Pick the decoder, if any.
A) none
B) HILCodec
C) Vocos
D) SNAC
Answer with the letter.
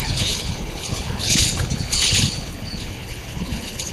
B